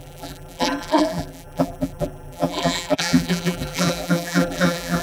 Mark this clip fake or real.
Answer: fake